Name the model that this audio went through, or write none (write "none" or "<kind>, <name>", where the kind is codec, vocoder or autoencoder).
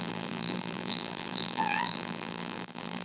vocoder, BigVGAN v2